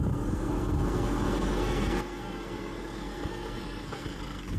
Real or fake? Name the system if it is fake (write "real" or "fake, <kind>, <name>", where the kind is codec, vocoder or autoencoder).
fake, codec, SNAC